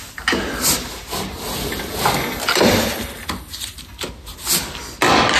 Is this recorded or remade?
recorded